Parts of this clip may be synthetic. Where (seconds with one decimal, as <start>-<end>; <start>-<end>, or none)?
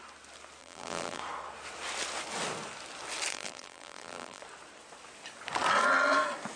0.6-1.2; 3.3-4.4